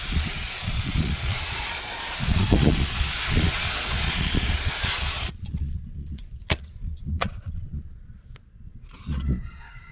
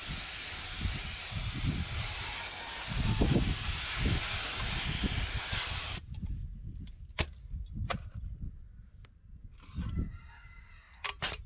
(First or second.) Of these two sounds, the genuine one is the second